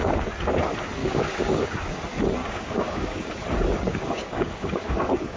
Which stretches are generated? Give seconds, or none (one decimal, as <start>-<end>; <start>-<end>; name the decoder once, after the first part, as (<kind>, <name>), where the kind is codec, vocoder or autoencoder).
1.0-2.0 (codec, DAC); 2.4-3.3; 3.9-5.4